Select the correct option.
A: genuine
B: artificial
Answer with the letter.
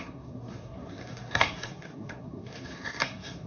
B